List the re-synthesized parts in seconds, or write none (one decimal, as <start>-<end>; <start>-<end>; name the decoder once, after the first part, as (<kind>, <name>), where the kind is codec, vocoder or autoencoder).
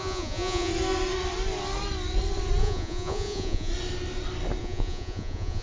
0.0-0.7 (vocoder, Vocos); 2.6-3.7; 4.6-5.6